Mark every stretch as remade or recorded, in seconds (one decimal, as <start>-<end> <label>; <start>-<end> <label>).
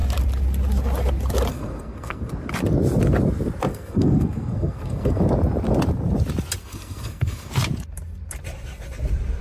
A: 0.0-1.5 recorded; 1.5-2.3 remade; 2.3-3.7 recorded; 3.7-5.2 remade; 5.2-6.6 recorded; 6.6-7.5 remade; 7.5-9.4 recorded